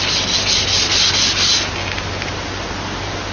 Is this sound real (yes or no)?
yes